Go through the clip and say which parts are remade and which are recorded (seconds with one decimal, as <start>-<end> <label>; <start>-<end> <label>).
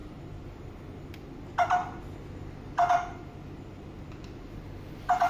0.0-5.3 recorded